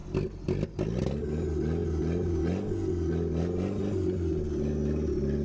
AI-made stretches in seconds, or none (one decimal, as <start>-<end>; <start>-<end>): none